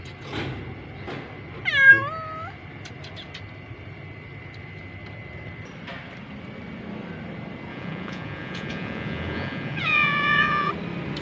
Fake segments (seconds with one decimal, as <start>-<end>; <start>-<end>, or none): 7.7-10.7